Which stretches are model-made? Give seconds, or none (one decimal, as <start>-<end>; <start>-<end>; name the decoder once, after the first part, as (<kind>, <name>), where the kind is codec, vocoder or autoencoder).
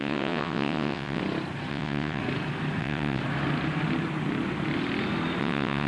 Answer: 0.0-1.2 (vocoder, WaveNeXt); 1.7-2.2; 2.8-3.2; 5.4-5.9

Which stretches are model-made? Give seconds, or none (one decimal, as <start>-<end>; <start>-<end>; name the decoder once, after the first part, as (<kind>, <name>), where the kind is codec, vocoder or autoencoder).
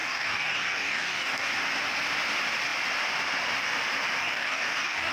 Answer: 0.0-1.5 (codec, DAC); 4.2-5.1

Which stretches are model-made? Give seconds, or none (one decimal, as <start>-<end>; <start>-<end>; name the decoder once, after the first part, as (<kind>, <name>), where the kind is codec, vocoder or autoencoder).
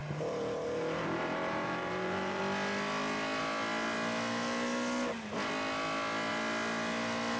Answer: 0.0-2.4 (vocoder, BigVGAN v2)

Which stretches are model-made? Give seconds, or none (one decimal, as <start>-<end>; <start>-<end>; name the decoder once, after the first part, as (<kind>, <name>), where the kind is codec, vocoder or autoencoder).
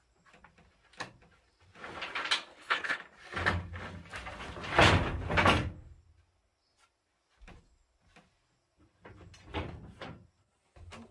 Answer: 2.5-3.0 (codec, HILCodec)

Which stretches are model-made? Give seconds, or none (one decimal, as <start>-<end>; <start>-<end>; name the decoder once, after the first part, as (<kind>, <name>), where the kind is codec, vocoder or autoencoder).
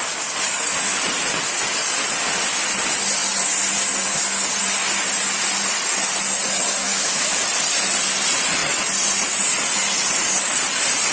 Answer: 6.8-7.4 (autoencoder, DAC-VAE)